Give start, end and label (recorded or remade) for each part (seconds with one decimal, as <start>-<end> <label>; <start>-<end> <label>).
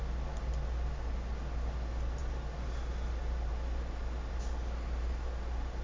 0.0-5.8 recorded